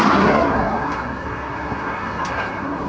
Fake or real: fake